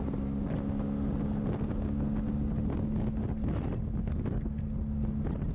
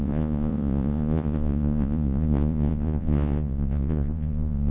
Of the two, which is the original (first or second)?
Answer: first